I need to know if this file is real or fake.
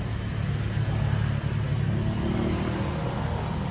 real